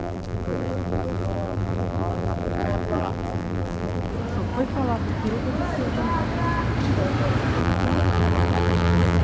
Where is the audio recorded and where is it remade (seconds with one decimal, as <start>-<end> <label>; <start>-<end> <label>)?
0.0-4.1 remade; 4.1-7.6 recorded; 7.6-9.2 remade